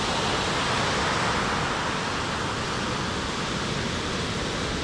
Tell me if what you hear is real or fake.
real